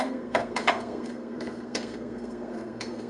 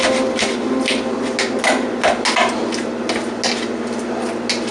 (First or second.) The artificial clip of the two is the first